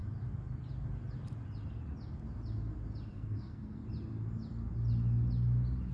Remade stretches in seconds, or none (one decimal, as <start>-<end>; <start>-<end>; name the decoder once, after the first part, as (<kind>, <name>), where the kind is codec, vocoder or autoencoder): 3.1-3.8 (codec, SNAC)